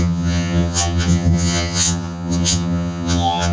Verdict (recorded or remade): remade